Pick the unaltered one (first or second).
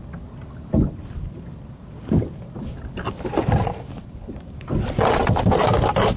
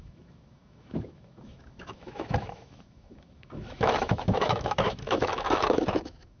first